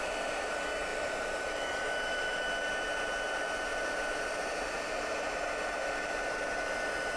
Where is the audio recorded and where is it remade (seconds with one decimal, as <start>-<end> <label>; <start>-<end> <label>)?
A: 0.0-0.9 recorded; 0.9-2.4 remade; 2.4-3.7 recorded; 3.7-4.5 remade; 4.5-7.2 recorded